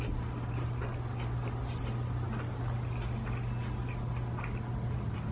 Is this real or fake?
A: real